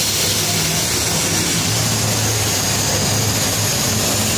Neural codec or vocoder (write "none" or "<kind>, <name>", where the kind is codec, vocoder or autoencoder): none